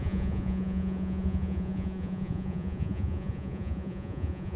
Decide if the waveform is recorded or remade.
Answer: remade